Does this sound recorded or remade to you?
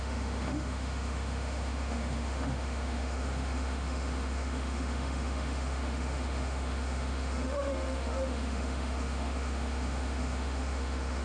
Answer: remade